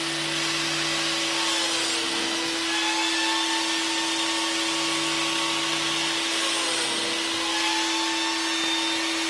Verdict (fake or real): real